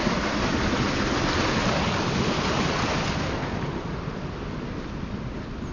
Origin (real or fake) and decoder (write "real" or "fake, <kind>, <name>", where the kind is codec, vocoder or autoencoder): real